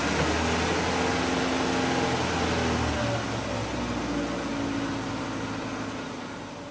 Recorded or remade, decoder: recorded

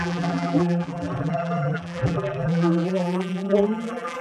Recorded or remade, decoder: remade, vocoder, BigVGAN v2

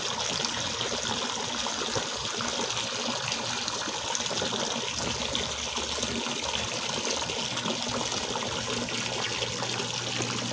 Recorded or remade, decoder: recorded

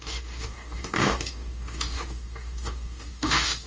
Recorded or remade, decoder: remade, codec, DAC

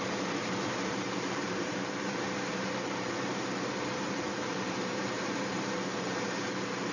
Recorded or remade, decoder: remade, vocoder, BigVGAN v2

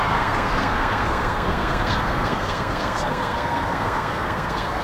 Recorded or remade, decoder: remade, codec, SNAC